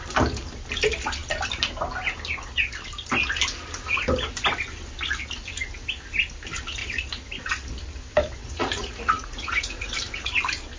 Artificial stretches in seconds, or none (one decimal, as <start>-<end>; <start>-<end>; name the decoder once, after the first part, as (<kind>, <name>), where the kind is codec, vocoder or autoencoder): 8.4-9.9 (vocoder, Vocos)